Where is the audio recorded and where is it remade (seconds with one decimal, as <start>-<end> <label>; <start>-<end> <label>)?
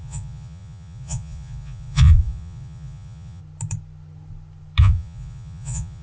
0.0-3.4 remade; 3.4-4.8 recorded; 4.8-6.0 remade